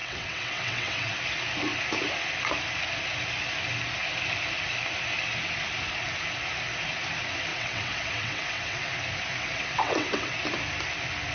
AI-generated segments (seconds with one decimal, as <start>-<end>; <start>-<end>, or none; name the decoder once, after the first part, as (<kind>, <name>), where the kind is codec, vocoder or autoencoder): 0.0-1.1 (vocoder, WaveNeXt); 7.5-8.9; 9.3-10.4